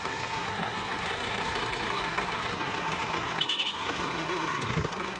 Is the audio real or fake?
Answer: fake